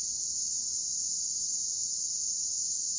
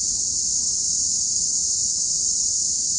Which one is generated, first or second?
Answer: second